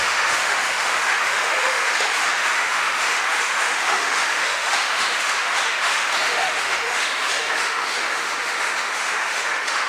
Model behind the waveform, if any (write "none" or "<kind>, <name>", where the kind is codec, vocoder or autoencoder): autoencoder, DAC-VAE